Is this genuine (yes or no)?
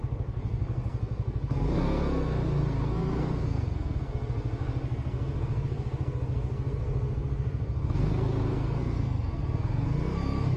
no